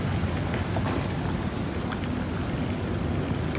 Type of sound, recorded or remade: recorded